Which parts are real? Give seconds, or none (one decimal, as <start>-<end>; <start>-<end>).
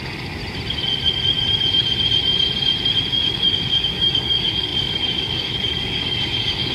0.4-3.1